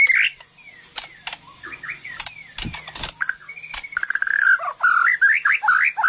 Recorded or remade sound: recorded